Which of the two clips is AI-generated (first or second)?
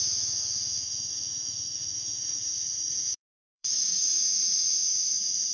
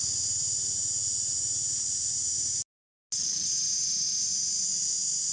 first